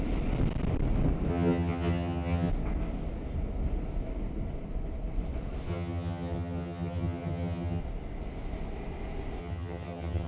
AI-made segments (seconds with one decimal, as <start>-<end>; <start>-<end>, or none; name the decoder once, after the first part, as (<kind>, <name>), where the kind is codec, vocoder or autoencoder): 1.3-2.5 (vocoder, HiFi-GAN); 5.7-7.8; 9.4-10.3